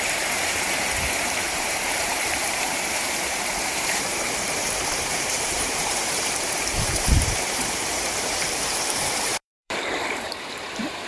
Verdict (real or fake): fake